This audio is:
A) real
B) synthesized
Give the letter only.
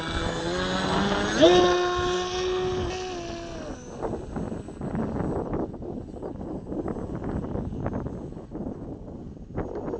A